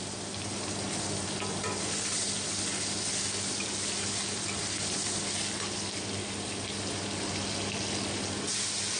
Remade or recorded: recorded